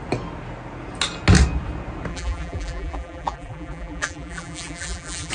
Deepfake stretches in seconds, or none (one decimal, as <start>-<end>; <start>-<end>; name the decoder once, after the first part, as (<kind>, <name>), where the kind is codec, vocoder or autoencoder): 2.1-5.3 (vocoder, BigVGAN v2)